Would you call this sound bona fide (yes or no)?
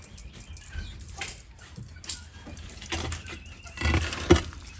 yes